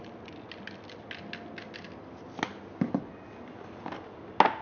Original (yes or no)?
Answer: yes